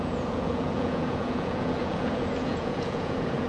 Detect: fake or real fake